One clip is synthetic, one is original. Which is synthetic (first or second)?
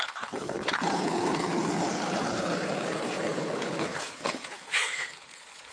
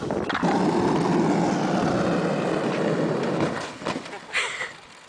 first